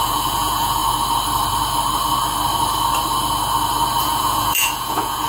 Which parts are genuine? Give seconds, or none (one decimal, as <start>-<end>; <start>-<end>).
0.8-4.0